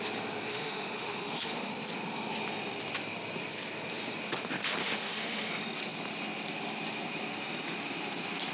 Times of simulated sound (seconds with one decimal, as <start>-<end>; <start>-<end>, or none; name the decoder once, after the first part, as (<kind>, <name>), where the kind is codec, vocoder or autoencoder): 0.5-1.7 (autoencoder, DAC-VAE); 4.8-5.5